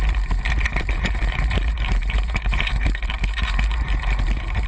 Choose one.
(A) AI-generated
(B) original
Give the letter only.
A